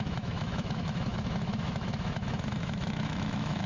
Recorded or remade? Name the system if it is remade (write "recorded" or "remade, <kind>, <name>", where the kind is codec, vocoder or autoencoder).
remade, autoencoder, DAC-VAE